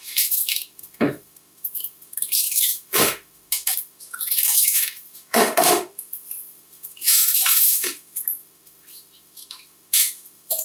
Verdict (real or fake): fake